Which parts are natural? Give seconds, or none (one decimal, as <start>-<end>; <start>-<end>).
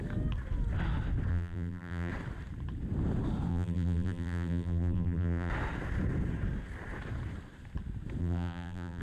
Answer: 0.0-1.3; 2.1-3.5; 5.5-8.2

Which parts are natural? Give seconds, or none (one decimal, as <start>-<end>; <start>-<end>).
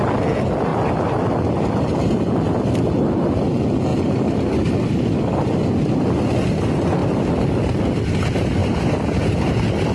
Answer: 0.0-3.9; 4.7-8.6; 9.4-9.9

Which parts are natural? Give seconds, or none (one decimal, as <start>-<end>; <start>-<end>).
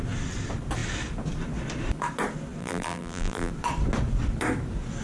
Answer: 0.0-2.6; 3.5-5.0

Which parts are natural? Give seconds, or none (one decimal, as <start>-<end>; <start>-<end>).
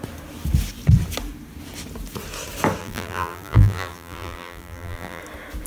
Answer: 0.0-2.8; 5.2-5.7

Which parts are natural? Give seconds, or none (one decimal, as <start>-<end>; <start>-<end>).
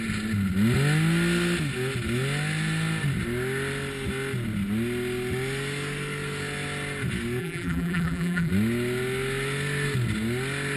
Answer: 0.0-7.4; 8.5-10.8